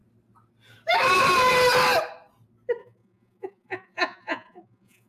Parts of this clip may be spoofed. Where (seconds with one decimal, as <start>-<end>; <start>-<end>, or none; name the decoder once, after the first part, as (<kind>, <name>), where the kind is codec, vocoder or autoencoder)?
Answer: 2.8-5.1 (vocoder, Vocos)